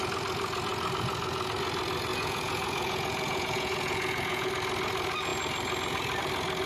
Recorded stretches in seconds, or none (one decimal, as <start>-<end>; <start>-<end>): 0.0-2.1; 4.5-6.7